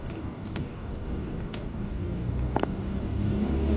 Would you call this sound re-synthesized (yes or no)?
yes